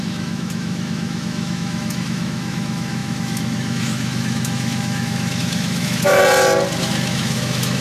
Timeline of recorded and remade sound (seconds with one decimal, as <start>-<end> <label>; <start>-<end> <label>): 0.0-6.2 remade; 6.2-6.8 recorded; 6.8-7.8 remade